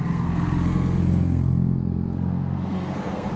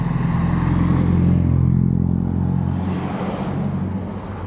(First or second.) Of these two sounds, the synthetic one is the first